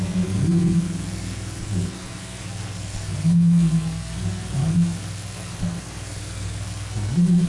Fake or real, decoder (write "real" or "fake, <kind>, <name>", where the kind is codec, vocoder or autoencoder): fake, codec, SNAC